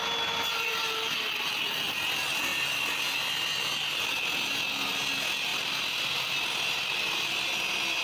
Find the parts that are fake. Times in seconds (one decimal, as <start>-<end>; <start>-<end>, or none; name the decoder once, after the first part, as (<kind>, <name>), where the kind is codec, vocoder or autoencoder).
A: 0.0-1.9 (vocoder, BigVGAN v2); 2.5-4.2; 5.5-6.0